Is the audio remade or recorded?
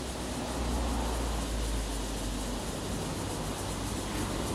recorded